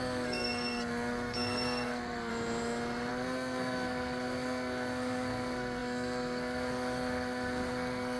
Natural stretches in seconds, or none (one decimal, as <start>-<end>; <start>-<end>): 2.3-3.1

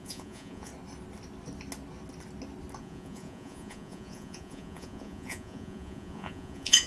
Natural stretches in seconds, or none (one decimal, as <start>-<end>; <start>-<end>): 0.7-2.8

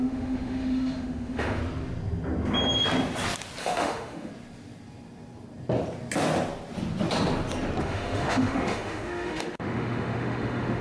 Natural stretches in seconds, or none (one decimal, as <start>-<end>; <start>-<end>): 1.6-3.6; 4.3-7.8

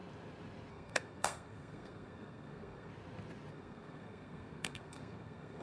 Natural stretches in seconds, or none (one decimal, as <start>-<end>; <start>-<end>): 0.0-0.7; 2.9-3.5

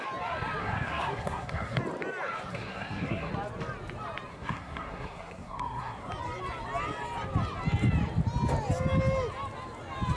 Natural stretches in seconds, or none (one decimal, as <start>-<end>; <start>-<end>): 0.0-0.6; 1.8-2.5; 3.3-4.3; 6.1-10.2

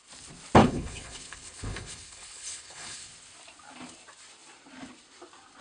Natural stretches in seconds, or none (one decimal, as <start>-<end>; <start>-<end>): 0.0-0.6; 3.1-5.6

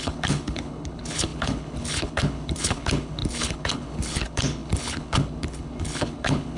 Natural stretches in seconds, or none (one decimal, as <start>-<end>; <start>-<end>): none

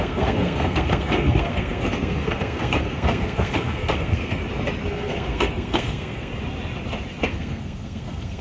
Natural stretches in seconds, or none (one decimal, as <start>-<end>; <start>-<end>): 4.4-4.9; 6.3-7.2